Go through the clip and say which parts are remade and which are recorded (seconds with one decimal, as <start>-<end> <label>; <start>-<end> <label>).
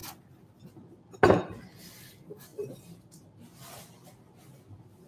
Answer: 0.0-2.5 recorded; 2.5-3.2 remade; 3.2-5.1 recorded